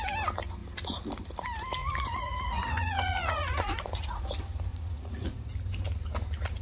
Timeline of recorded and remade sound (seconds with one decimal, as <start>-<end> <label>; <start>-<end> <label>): 0.0-1.8 recorded; 1.8-4.3 remade; 4.3-4.7 recorded; 4.7-5.5 remade; 5.5-6.6 recorded